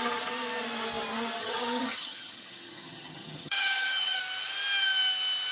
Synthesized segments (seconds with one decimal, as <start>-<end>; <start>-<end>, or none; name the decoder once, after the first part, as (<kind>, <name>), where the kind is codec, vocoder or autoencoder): 1.4-4.2 (vocoder, HiFi-GAN)